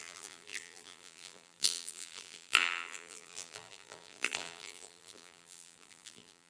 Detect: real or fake fake